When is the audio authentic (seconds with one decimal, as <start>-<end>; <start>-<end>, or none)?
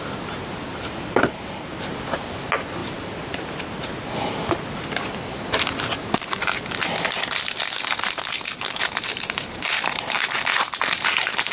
0.0-0.7; 1.8-2.8; 3.6-9.1; 10.2-11.5